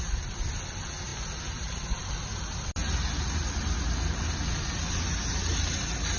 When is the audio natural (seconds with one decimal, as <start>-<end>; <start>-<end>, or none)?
0.0-6.2